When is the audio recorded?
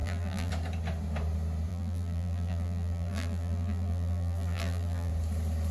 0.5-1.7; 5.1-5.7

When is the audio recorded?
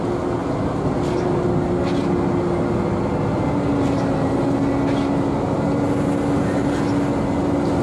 0.0-7.8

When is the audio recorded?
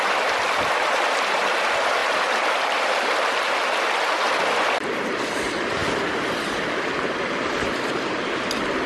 0.0-2.0; 3.3-8.9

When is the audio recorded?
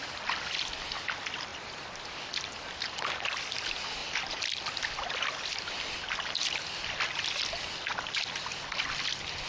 0.0-4.0; 4.7-7.9; 8.7-9.5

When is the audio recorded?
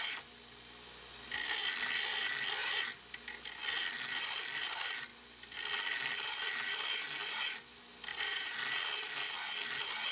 0.0-8.1; 8.6-10.1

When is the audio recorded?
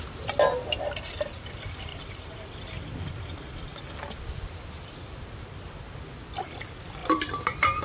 0.0-1.9; 6.1-7.0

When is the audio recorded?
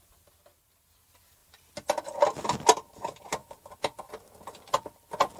0.0-5.4